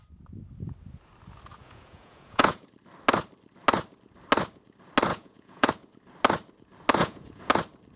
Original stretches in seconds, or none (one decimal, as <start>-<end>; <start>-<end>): 0.0-1.6; 2.7-5.1; 5.7-7.0; 7.5-8.0